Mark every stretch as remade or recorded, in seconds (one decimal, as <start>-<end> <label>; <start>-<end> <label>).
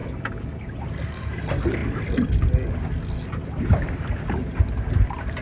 0.0-0.8 recorded; 0.8-1.8 remade; 1.8-3.6 recorded; 3.6-5.4 remade